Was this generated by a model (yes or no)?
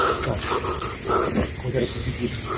no